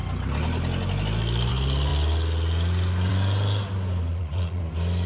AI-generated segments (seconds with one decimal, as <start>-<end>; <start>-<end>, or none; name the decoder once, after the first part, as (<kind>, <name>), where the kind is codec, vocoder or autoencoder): 4.1-4.6 (vocoder, Vocos)